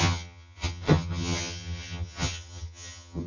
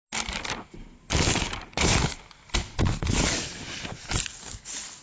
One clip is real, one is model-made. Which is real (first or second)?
second